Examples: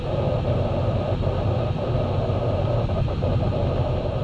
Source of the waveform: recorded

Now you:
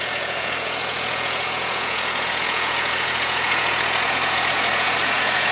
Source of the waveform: remade